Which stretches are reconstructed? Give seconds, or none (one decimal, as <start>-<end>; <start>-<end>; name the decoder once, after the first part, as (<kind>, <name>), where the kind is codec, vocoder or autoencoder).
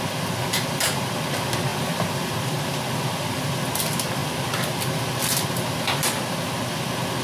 1.7-3.6 (vocoder, BigVGAN v2); 4.2-4.8